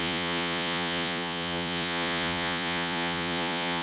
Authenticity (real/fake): fake